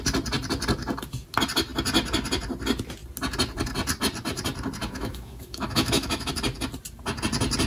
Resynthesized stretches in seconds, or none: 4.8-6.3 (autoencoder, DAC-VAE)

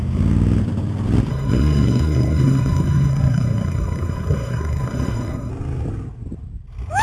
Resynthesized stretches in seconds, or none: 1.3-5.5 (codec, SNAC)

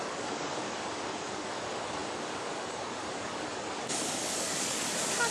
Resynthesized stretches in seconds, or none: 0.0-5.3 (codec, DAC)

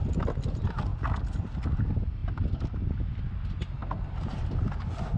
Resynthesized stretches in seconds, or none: none

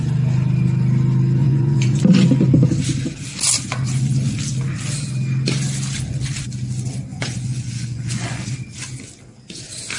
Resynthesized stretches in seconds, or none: 1.4-2.0 (vocoder, Vocos); 7.1-8.5

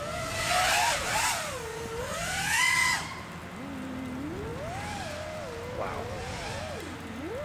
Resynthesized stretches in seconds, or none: 2.0-2.6 (codec, SNAC)

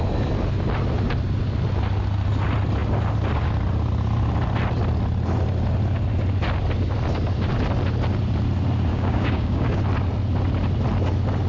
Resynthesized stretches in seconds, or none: 8.9-9.8 (codec, DAC)